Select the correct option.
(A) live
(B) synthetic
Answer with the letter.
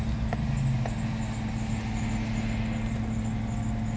A